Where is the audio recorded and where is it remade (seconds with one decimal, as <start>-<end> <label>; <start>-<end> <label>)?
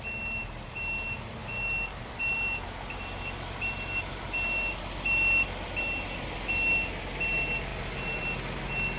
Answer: 0.0-9.0 recorded